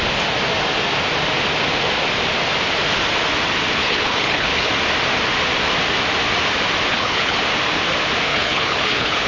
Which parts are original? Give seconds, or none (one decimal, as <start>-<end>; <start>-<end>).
0.0-3.8; 4.7-6.9; 7.4-8.3